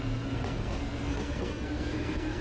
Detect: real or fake fake